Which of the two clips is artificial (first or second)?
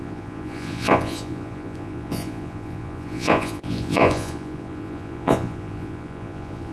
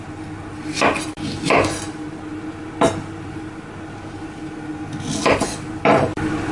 first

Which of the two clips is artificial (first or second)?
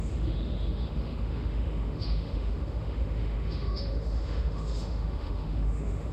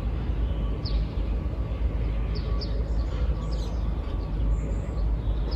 first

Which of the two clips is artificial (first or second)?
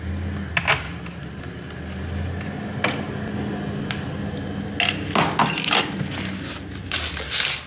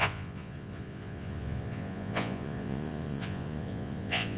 second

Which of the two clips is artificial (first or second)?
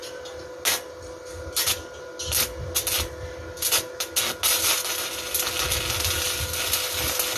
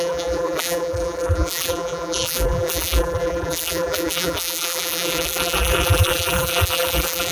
second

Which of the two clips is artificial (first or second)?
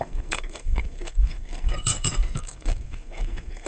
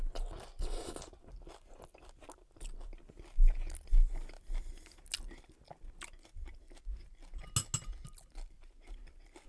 first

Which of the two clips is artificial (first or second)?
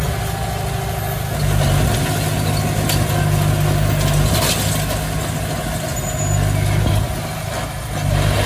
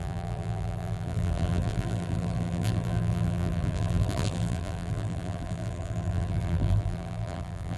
second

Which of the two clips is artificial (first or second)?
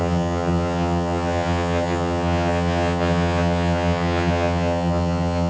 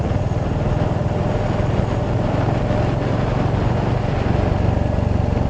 first